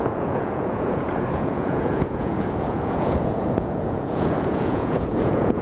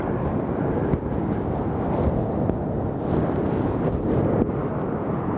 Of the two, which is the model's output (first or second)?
first